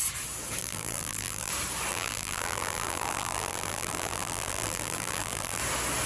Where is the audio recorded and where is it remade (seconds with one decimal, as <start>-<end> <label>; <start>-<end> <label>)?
0.0-0.6 recorded; 0.6-1.5 remade; 1.5-1.9 recorded; 1.9-5.6 remade; 5.6-6.1 recorded